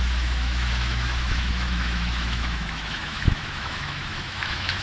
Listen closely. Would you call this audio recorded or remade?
remade